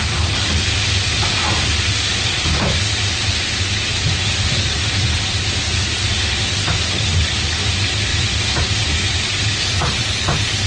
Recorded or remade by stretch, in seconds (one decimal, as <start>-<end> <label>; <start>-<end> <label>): 0.0-2.1 recorded; 2.1-2.8 remade; 2.8-8.1 recorded; 8.1-10.7 remade